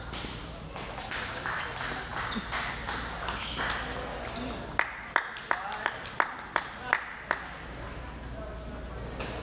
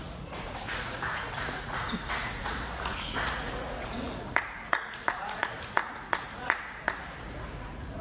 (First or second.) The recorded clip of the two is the first